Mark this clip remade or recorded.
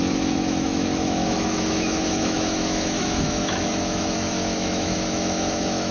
remade